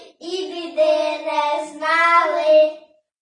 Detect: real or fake real